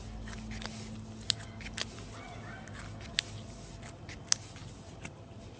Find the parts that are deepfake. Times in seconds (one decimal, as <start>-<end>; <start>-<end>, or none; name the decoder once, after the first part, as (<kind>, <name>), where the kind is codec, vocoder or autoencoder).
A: none